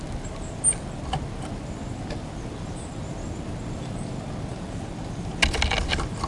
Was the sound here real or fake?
real